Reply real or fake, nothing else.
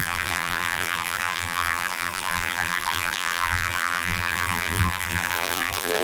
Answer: fake